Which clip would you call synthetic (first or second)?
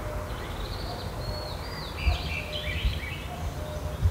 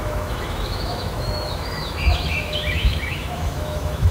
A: second